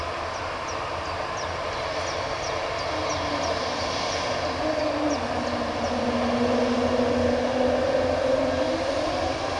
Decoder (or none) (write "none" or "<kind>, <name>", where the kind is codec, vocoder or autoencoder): none